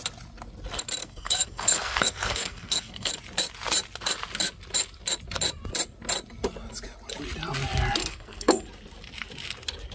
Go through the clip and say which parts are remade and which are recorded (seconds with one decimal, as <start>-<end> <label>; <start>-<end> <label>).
0.0-1.0 recorded; 1.0-3.1 remade; 3.1-8.0 recorded; 8.0-8.6 remade; 8.6-9.9 recorded